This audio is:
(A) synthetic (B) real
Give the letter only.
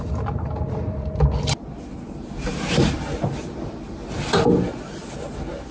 B